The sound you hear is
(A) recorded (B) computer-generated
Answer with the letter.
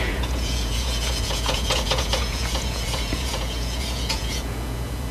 B